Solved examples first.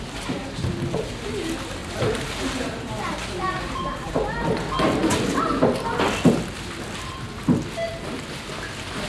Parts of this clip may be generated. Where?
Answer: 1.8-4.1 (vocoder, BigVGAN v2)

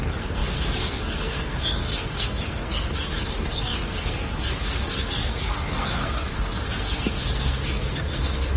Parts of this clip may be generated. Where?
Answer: 0.0-8.6 (codec, SNAC)

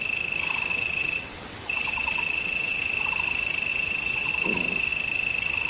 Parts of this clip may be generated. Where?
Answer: 0.7-2.8 (vocoder, WaveNeXt); 3.7-4.3

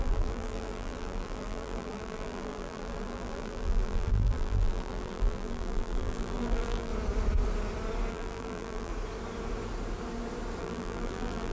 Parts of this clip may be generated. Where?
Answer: 0.0-6.9 (vocoder, BigVGAN v2); 8.1-8.9; 10.6-11.5

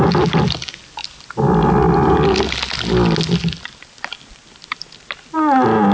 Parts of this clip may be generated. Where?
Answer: none

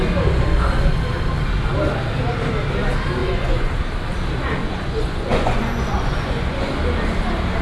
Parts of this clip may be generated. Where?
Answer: 3.2-3.7 (vocoder, Vocos); 4.6-6.7

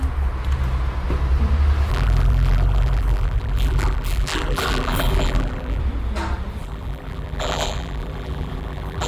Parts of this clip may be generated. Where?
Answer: 1.9-5.8 (vocoder, BigVGAN v2); 6.6-9.1

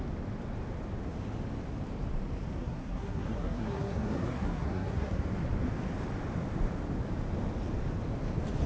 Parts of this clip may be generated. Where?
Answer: 2.6-5.2 (codec, SNAC)